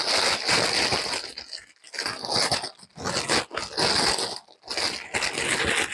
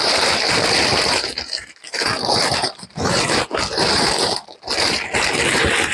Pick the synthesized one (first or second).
second